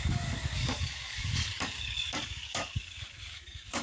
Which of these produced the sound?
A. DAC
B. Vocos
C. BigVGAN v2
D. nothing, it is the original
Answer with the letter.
A